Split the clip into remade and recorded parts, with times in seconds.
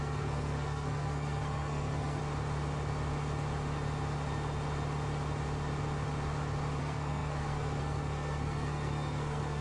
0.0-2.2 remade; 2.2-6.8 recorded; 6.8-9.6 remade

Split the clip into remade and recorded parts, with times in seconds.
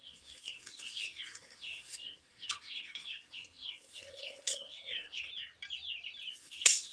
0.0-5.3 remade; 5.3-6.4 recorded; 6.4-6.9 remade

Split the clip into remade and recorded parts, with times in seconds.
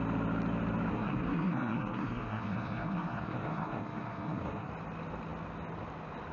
0.0-0.9 recorded; 0.9-4.7 remade; 4.7-6.3 recorded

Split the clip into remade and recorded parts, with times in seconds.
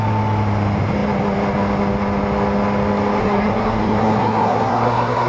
0.0-3.2 recorded; 3.2-5.3 remade